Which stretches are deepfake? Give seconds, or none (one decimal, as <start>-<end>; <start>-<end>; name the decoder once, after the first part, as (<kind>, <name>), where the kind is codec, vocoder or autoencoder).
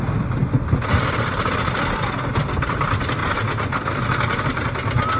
none